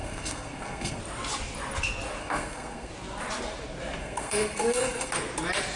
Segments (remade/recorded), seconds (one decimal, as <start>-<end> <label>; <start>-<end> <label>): 0.0-1.0 remade; 1.0-2.2 recorded; 2.2-2.9 remade; 2.9-4.0 recorded; 4.0-5.1 remade; 5.1-5.8 recorded